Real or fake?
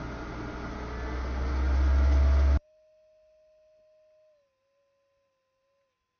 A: real